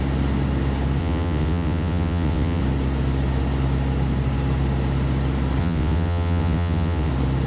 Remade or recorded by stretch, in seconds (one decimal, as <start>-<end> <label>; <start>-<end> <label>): 0.0-1.0 recorded; 1.0-2.6 remade; 2.6-5.6 recorded; 5.6-7.1 remade; 7.1-7.5 recorded